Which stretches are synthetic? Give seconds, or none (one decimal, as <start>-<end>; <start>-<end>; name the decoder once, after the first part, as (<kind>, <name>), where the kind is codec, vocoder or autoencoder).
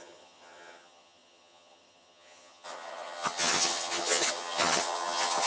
0.0-5.5 (vocoder, HiFi-GAN)